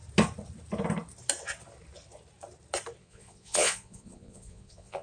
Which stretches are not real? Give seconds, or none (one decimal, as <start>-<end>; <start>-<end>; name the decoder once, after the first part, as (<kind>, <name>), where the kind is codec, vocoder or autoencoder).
3.0-5.0 (vocoder, Vocos)